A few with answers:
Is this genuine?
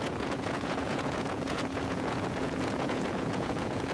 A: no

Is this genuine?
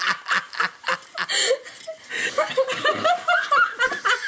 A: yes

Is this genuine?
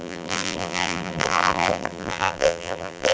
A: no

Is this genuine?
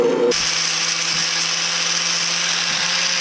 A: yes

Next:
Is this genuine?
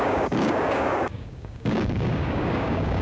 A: no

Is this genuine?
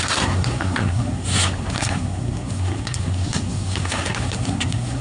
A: no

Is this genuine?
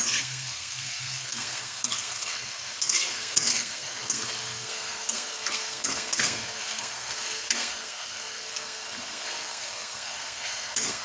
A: no